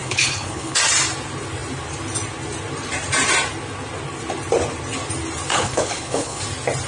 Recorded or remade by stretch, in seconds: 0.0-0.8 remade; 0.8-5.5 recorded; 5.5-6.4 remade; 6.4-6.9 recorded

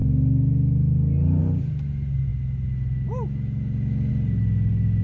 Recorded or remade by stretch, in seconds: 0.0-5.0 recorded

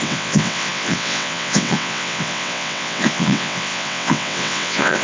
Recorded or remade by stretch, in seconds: 0.0-5.0 remade

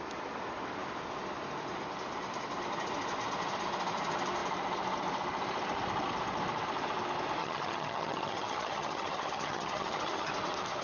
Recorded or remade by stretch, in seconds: 0.0-7.4 recorded; 7.4-10.3 remade; 10.3-10.8 recorded

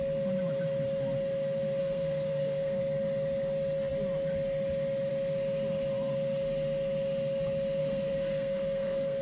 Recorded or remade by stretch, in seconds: 0.0-1.8 recorded; 1.8-2.8 remade; 2.8-7.8 recorded; 7.8-9.2 remade